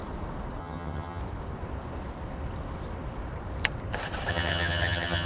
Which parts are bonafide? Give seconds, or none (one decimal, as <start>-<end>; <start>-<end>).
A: 0.0-0.6; 1.2-4.3